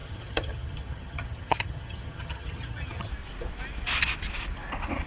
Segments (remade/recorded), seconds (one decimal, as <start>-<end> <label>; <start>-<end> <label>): 0.0-3.1 remade; 3.1-5.1 recorded